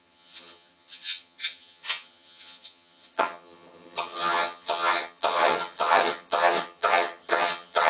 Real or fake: fake